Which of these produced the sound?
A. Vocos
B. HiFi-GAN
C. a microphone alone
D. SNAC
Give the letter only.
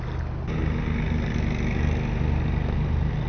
C